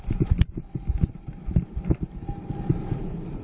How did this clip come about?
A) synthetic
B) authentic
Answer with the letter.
B